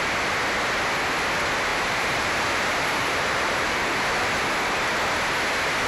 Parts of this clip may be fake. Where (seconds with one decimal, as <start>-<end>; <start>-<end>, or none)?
1.7-3.8